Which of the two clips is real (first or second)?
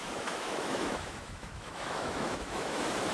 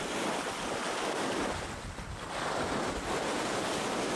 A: second